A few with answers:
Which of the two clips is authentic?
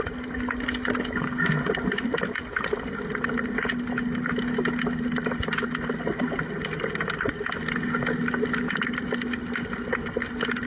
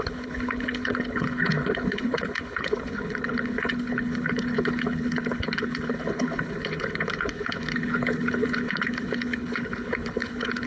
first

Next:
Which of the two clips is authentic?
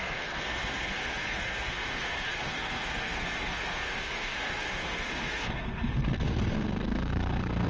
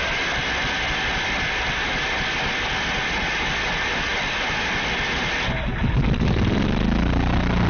second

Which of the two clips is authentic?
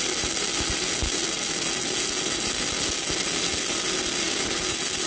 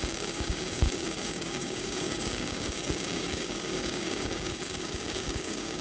first